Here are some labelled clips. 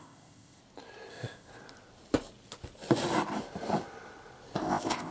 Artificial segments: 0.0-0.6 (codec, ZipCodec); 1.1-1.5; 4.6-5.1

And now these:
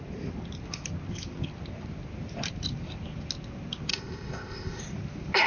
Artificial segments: 3.9-4.8 (codec, ZipCodec)

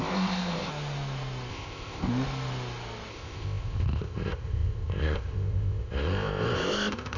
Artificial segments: 0.0-0.7 (codec, ZipCodec); 1.5-2.1; 3.1-7.2